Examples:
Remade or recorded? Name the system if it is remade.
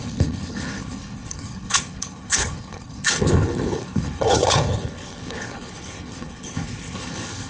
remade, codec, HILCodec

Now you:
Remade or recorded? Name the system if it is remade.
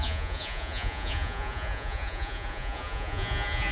remade, vocoder, Vocos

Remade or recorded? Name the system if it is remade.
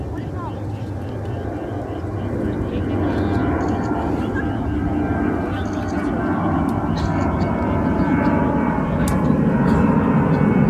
recorded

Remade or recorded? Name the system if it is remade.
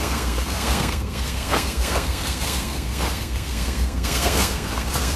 remade, codec, SNAC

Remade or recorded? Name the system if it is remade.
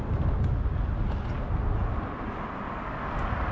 recorded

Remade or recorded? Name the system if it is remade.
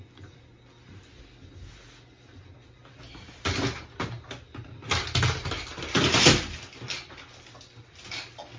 recorded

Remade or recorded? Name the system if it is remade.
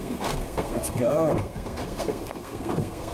remade, codec, SNAC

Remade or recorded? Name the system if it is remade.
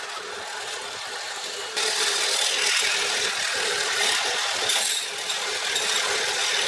recorded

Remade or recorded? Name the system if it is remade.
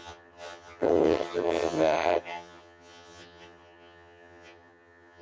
remade, vocoder, HiFi-GAN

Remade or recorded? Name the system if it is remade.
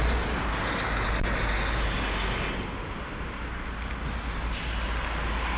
recorded